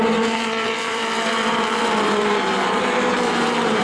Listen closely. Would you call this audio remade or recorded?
remade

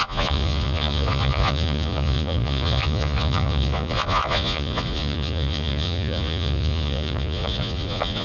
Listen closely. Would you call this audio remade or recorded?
remade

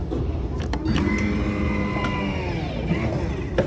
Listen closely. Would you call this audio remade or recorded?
recorded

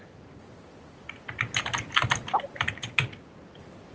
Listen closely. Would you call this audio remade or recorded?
recorded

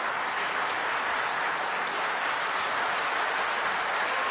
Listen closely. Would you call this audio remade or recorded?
recorded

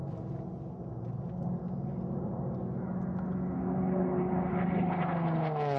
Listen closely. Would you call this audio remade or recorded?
recorded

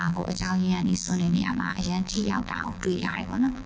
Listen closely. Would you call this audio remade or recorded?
remade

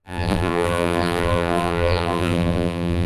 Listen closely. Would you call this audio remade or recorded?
remade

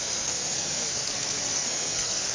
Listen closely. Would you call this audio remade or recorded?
remade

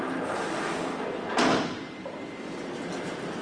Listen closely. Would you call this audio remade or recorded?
recorded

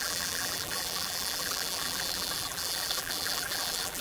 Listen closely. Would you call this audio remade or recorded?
remade